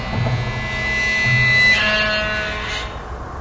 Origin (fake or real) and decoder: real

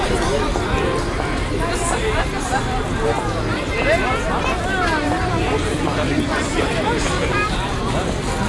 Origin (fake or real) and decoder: real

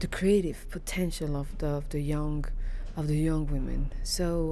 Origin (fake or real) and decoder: real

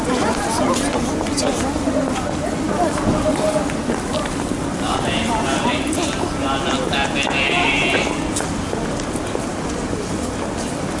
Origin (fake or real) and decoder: real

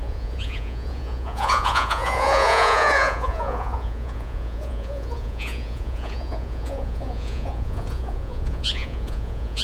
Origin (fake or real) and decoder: fake, vocoder, Vocos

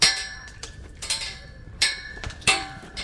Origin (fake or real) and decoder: fake, vocoder, BigVGAN v2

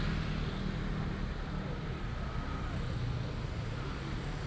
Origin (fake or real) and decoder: real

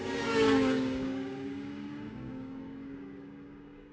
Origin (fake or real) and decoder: fake, codec, DAC